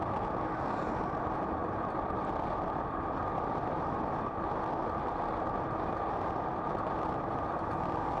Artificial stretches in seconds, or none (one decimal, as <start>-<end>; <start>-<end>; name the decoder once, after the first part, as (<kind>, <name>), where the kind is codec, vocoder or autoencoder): none